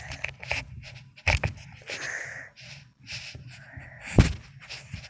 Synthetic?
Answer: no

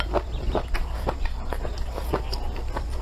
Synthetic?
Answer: no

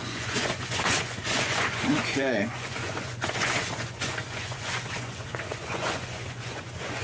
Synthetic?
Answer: yes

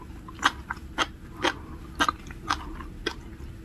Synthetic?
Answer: no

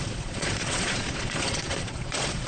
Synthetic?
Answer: yes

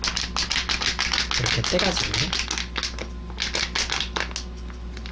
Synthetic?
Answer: no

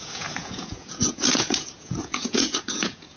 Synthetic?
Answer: yes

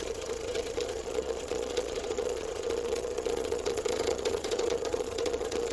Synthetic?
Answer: yes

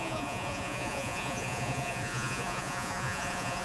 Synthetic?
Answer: yes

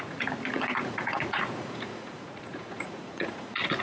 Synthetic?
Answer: yes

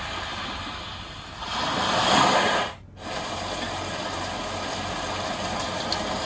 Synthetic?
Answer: no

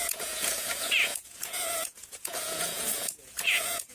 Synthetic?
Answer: yes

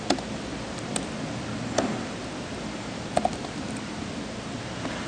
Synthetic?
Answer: no